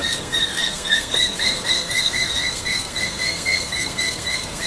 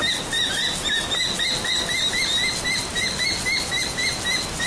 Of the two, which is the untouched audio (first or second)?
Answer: second